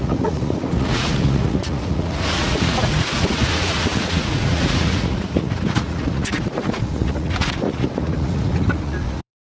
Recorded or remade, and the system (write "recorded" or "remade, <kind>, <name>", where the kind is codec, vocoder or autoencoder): remade, vocoder, Vocos